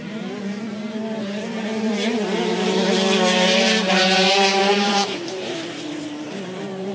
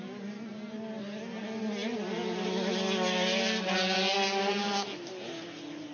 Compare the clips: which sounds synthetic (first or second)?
first